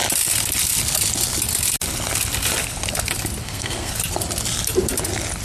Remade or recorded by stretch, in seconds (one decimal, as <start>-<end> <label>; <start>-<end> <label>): 0.0-3.4 recorded; 3.4-3.9 remade; 3.9-5.4 recorded